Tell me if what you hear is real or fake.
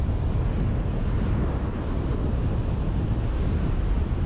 real